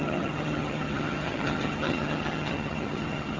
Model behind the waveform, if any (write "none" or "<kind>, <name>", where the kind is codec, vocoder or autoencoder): vocoder, HiFi-GAN